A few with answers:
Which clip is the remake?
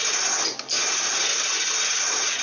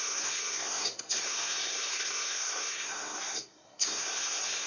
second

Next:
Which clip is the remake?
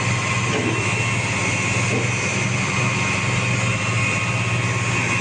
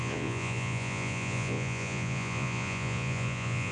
second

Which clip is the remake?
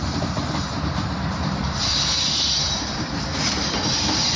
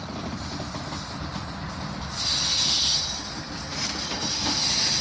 first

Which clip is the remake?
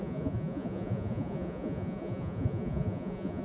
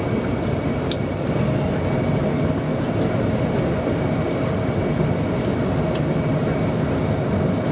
first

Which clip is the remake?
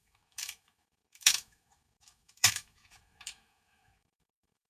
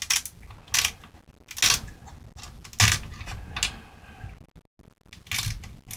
first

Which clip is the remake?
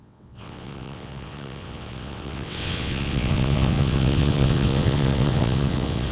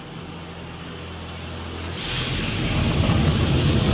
first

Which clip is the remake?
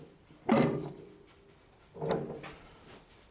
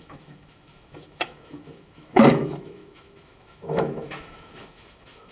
second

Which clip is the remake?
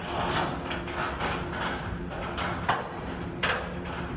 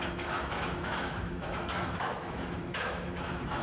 second